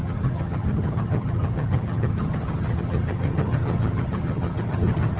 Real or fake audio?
fake